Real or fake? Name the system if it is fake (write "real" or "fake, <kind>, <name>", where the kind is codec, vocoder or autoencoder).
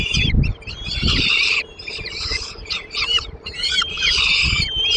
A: fake, vocoder, BigVGAN v2